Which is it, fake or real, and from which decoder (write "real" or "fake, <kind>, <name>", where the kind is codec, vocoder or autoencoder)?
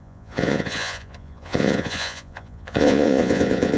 fake, vocoder, Vocos